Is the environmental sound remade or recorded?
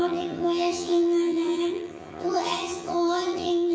remade